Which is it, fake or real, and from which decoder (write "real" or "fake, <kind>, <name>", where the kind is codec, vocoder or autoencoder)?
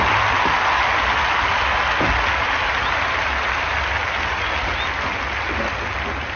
real